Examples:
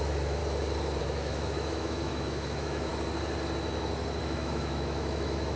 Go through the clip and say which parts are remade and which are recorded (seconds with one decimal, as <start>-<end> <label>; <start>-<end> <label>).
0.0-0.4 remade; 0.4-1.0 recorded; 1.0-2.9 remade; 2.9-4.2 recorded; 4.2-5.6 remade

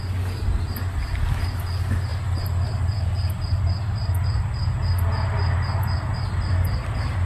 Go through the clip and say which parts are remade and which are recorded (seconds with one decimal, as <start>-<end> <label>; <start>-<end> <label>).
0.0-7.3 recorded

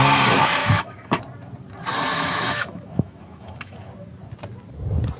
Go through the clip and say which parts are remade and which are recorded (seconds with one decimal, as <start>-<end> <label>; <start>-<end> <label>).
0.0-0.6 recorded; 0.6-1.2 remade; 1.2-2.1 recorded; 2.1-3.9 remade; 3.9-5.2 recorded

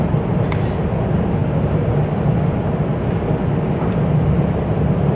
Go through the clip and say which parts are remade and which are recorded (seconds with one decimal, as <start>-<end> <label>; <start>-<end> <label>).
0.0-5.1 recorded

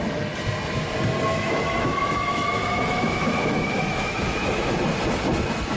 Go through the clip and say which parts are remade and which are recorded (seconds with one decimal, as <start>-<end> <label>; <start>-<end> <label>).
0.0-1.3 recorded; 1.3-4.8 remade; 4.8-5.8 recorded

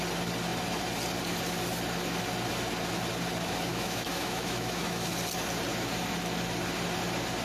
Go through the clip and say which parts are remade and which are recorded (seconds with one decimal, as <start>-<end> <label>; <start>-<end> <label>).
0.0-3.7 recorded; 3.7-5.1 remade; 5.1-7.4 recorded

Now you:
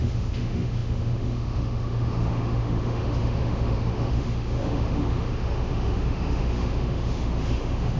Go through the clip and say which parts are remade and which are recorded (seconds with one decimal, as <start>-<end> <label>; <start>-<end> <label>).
0.0-8.0 remade